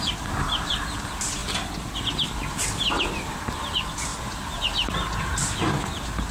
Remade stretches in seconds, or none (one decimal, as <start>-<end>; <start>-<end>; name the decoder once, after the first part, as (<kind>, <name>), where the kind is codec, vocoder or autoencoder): none

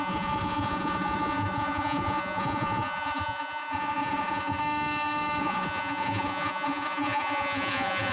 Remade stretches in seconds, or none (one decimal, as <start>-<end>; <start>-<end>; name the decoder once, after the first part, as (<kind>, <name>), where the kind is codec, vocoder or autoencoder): 0.0-4.6 (vocoder, Vocos); 5.4-8.1

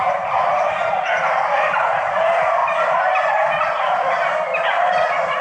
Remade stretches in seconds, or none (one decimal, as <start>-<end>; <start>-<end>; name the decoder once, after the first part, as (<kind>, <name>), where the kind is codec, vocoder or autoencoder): none

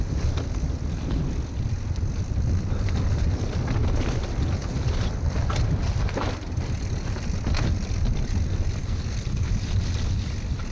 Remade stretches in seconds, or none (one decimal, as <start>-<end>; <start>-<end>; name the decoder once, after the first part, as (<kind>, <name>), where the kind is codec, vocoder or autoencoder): 8.8-9.5 (codec, SNAC)

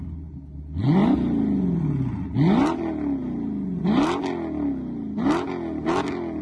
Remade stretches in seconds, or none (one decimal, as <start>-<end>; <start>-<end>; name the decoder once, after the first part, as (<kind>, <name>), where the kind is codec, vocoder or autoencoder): none

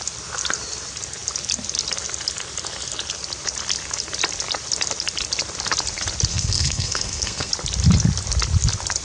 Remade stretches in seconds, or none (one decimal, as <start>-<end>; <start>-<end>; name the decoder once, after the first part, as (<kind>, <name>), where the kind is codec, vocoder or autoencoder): 6.3-7.5 (codec, SNAC)